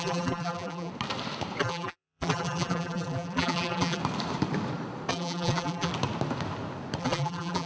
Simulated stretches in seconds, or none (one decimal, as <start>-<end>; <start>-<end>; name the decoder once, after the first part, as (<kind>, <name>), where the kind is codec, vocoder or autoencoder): 0.0-0.9 (vocoder, BigVGAN v2); 1.6-4.0; 5.1-5.9; 7.0-7.7